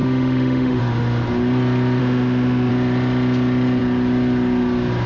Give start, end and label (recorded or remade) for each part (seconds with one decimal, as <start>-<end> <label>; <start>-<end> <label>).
0.0-0.8 remade; 0.8-2.0 recorded; 2.0-2.7 remade; 2.7-5.1 recorded